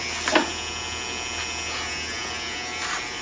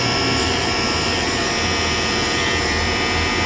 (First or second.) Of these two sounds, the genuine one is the first